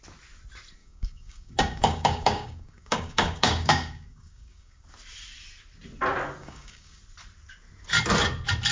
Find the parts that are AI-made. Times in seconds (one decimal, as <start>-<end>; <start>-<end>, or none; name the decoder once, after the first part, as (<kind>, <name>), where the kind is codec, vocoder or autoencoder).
0.8-4.8 (codec, DAC); 6.4-7.0